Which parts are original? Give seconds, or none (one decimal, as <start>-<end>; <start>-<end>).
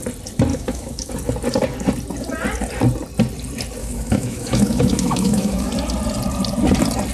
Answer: 0.0-0.5; 1.1-3.8; 5.7-7.1